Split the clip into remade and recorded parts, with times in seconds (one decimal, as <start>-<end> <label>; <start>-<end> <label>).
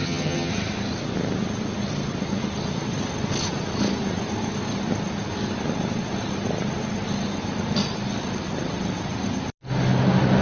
0.0-0.5 remade; 0.5-10.4 recorded